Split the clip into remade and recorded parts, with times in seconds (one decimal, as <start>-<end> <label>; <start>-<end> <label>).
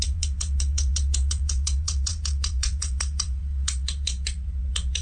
0.0-5.0 remade